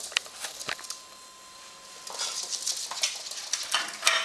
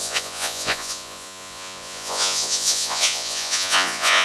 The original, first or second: first